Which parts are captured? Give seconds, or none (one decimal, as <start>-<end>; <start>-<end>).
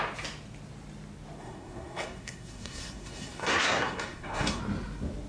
0.0-1.4; 4.6-5.3